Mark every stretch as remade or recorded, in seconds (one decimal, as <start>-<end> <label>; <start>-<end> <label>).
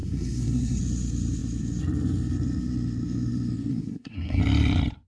0.0-0.8 remade; 0.8-3.7 recorded; 3.7-4.4 remade; 4.4-5.1 recorded